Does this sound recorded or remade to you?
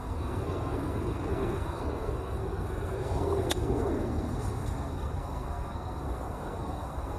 remade